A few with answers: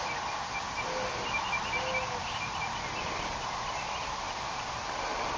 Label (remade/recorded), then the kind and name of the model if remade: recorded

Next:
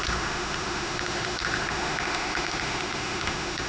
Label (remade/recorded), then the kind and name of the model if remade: remade, autoencoder, DAC-VAE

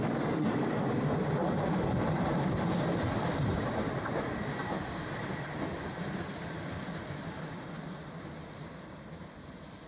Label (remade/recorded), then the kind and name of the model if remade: recorded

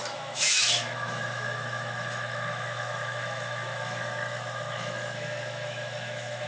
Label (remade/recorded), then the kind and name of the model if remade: remade, autoencoder, DAC-VAE